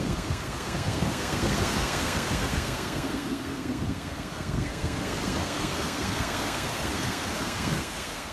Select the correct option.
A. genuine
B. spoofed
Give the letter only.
B